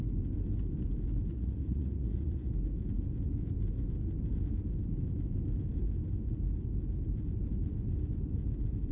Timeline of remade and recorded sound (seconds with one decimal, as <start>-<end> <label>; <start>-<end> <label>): 0.0-1.3 recorded; 1.3-2.5 remade; 2.5-8.9 recorded